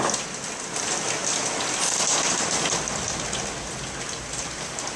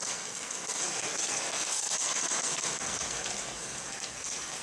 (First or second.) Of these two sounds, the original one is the first